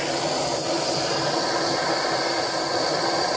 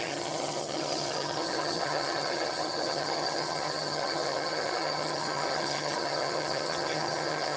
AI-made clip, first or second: second